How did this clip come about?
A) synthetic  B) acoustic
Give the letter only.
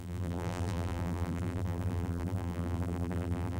A